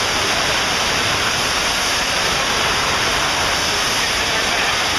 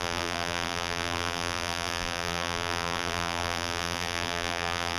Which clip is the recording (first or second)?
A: first